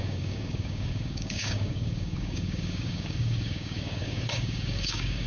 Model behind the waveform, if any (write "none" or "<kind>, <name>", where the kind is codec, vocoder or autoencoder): codec, DAC